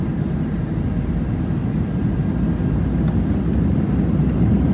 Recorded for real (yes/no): yes